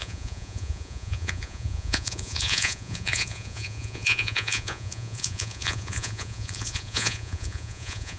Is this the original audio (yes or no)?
no